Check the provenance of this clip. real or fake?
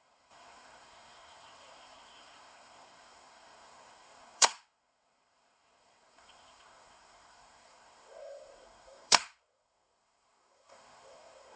fake